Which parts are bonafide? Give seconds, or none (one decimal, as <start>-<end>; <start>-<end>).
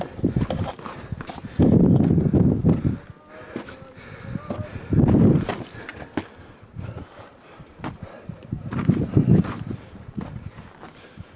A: 1.5-6.6